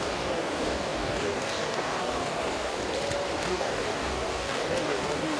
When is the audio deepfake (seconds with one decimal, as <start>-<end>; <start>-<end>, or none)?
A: 0.0-2.8; 3.4-5.4

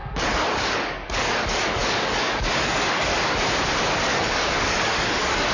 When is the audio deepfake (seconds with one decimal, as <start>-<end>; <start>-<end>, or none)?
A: 0.0-3.1; 4.1-5.5